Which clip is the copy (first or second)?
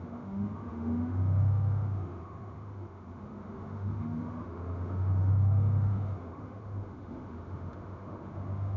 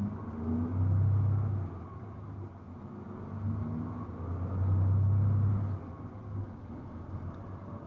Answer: first